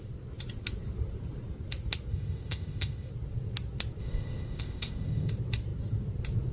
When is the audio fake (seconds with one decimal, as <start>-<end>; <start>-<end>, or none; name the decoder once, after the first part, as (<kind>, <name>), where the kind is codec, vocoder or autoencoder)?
2.1-3.1 (codec, ZipCodec); 4.0-5.3